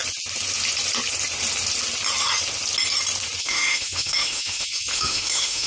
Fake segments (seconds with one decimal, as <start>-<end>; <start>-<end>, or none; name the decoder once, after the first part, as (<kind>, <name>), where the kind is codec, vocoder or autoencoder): 3.4-5.7 (autoencoder, DAC-VAE)